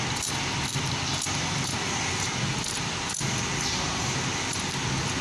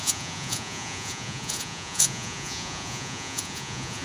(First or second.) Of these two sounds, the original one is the first